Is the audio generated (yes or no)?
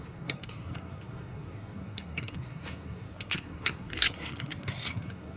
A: yes